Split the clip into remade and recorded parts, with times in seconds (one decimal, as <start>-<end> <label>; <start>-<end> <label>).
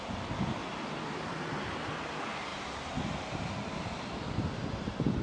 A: 0.0-0.6 recorded; 0.6-1.7 remade; 1.7-2.5 recorded; 2.5-5.2 remade